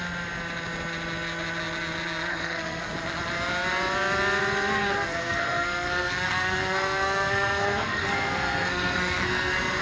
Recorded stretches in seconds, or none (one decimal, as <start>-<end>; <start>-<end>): 0.0-2.3; 2.8-5.1